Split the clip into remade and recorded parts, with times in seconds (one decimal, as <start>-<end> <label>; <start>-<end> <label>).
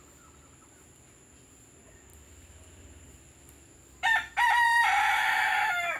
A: 0.0-6.0 recorded